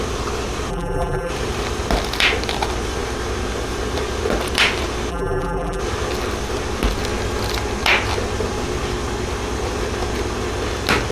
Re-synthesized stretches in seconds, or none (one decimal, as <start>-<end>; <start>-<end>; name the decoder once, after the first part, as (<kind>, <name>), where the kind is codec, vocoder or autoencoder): 0.7-1.3 (vocoder, BigVGAN v2); 5.1-5.8